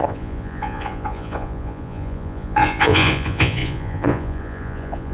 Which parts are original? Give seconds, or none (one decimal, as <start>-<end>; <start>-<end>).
none